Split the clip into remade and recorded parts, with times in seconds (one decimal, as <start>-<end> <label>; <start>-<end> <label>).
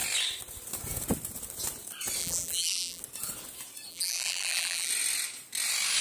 0.0-2.2 recorded; 2.2-3.0 remade; 3.0-3.9 recorded; 3.9-4.9 remade; 4.9-6.0 recorded